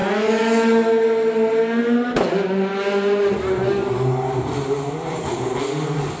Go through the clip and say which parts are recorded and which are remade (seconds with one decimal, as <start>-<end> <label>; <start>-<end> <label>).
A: 0.0-6.2 recorded